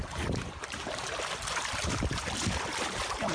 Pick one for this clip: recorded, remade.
remade